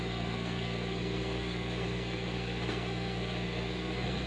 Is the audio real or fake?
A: fake